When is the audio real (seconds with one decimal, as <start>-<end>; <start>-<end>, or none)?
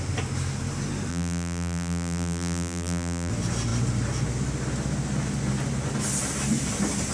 0.0-1.1; 3.3-7.1